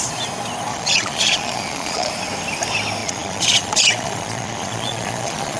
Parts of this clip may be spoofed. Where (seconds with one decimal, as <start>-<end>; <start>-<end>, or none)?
0.7-2.1; 3.0-5.6